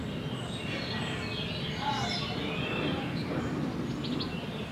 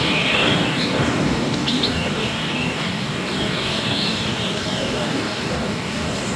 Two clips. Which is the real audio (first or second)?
first